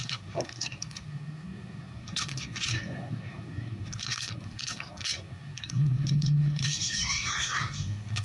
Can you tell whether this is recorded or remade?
remade